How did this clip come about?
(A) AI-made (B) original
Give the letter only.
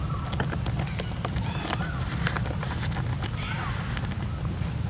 B